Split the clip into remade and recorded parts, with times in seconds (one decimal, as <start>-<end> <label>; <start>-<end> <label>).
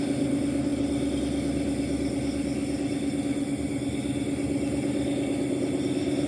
0.0-6.3 recorded